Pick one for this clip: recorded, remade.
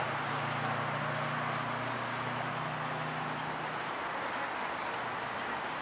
recorded